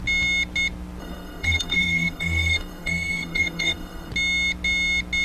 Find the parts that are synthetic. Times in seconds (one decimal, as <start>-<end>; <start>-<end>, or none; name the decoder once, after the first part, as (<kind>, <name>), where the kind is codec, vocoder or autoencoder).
1.0-4.1 (codec, SNAC)